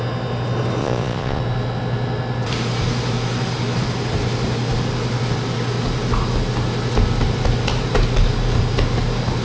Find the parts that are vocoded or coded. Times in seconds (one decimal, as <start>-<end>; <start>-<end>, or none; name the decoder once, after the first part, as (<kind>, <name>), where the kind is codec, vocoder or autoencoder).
0.8-1.4 (vocoder, Vocos)